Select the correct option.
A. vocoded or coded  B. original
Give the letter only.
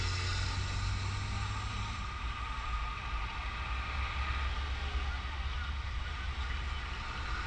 B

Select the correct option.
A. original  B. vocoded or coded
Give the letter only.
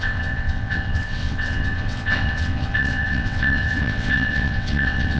B